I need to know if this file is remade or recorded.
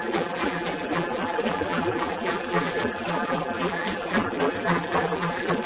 remade